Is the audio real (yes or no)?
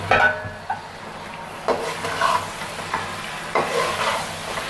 yes